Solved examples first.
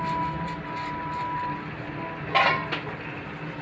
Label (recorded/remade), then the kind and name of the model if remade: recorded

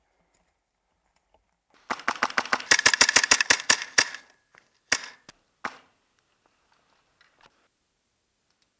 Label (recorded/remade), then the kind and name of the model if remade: recorded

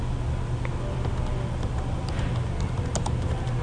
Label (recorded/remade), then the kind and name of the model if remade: recorded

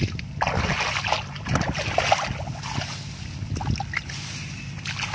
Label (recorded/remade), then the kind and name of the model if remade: recorded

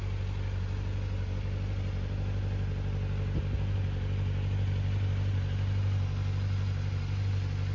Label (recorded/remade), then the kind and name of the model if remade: recorded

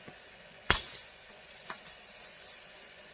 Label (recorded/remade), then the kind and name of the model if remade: remade, vocoder, Vocos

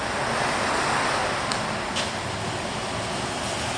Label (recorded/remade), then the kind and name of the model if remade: recorded